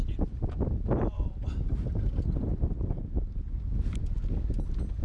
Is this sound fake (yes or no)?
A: no